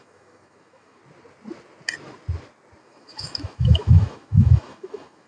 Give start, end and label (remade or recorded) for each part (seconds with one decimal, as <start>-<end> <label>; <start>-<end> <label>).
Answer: 0.0-1.0 remade; 1.0-2.8 recorded; 2.8-5.3 remade